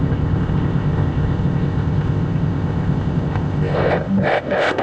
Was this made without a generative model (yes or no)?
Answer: no